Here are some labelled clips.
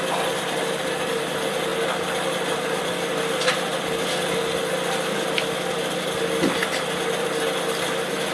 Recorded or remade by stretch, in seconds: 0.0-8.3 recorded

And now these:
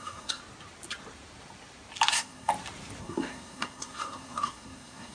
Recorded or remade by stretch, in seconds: 0.0-0.4 remade; 0.4-2.1 recorded; 2.1-2.5 remade; 2.5-3.0 recorded; 3.0-5.1 remade

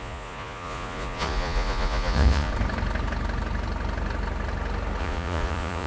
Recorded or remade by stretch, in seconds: 0.0-2.5 remade; 2.5-5.0 recorded; 5.0-5.9 remade

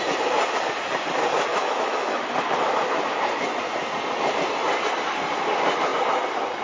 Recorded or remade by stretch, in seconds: 0.0-1.5 recorded; 1.5-2.2 remade; 2.2-6.6 recorded